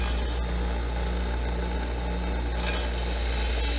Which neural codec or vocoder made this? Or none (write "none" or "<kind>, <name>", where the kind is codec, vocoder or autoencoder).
none